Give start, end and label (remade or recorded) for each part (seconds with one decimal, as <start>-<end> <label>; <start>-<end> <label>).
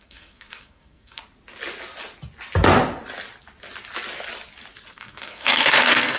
0.0-1.2 remade; 1.2-4.9 recorded; 4.9-6.2 remade